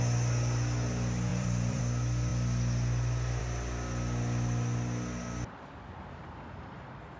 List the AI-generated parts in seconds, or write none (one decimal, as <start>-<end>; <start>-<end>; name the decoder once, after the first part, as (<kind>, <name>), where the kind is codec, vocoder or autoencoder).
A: 1.3-1.8 (vocoder, BigVGAN v2)